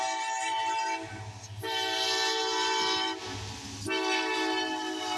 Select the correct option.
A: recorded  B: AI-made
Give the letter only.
A